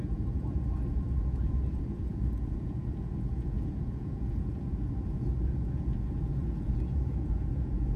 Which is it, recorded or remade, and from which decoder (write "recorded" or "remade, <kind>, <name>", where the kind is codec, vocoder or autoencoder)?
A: remade, vocoder, Vocos